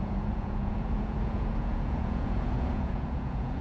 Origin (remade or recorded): remade